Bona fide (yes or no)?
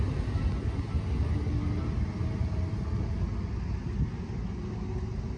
yes